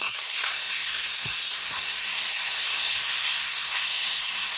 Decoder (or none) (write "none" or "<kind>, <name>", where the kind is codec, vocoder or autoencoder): codec, SNAC